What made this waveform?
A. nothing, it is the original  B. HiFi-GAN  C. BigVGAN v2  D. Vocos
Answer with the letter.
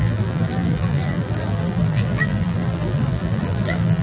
C